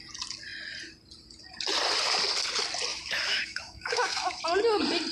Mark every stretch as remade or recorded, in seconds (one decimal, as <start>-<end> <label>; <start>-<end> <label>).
0.0-2.9 recorded; 2.9-4.4 remade; 4.4-5.1 recorded